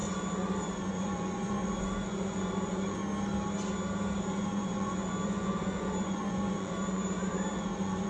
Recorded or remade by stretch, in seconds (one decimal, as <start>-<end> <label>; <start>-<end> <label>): 0.0-3.0 remade; 3.0-4.2 recorded; 4.2-8.1 remade